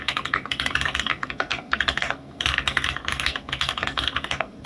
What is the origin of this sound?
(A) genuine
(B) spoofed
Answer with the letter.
B